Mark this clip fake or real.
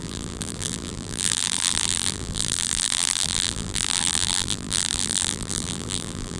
fake